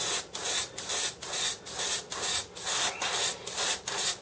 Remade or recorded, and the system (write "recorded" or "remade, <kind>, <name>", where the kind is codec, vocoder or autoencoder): recorded